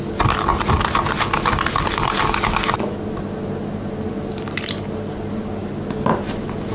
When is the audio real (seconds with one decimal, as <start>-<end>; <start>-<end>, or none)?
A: 0.0-6.7